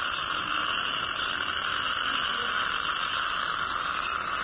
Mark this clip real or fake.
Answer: real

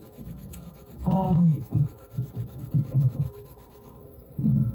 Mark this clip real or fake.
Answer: fake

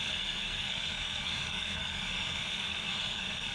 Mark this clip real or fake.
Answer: fake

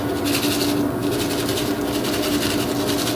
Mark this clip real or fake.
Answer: real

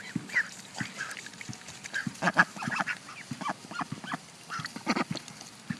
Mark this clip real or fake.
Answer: real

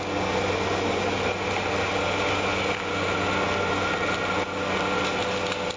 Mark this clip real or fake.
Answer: real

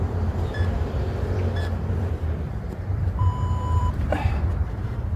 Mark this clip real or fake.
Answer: fake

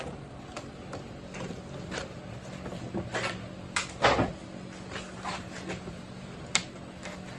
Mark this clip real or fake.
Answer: real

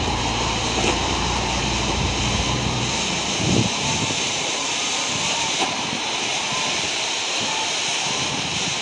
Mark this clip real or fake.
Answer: fake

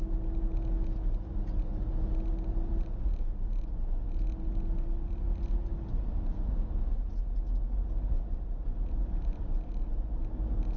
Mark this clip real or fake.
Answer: real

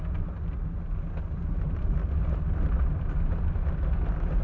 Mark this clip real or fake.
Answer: real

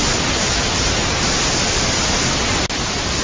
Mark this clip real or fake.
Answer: real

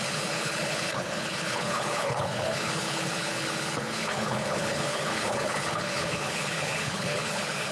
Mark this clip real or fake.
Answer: fake